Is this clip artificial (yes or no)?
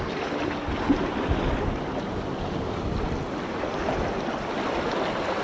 no